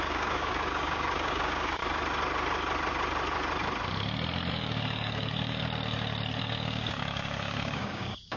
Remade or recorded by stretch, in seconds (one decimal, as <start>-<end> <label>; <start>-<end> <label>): 0.0-1.8 remade; 1.8-4.5 recorded; 4.5-5.6 remade; 5.6-6.4 recorded; 6.4-8.4 remade